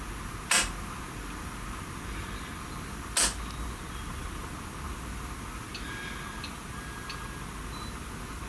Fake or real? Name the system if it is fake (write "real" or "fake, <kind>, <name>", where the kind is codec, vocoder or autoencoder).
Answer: real